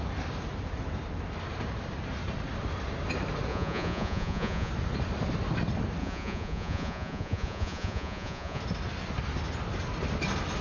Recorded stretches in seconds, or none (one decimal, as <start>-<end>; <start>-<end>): 0.0-3.5; 4.7-6.0; 8.6-10.6